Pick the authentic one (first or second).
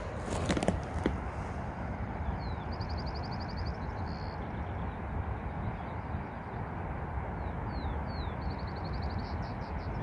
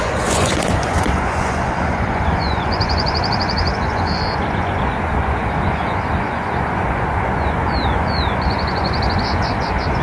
first